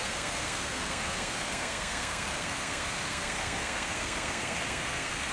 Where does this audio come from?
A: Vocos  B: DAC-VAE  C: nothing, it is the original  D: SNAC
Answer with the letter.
D